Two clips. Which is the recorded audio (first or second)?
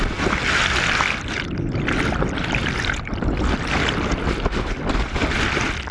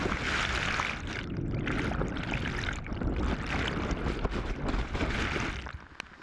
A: second